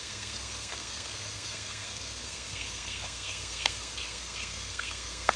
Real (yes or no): no